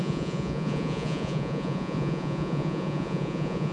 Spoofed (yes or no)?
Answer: yes